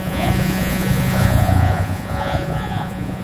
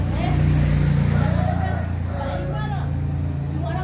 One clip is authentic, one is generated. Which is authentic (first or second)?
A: second